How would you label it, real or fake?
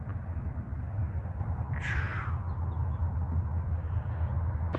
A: real